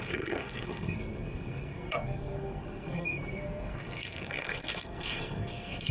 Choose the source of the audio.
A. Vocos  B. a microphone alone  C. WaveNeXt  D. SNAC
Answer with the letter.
D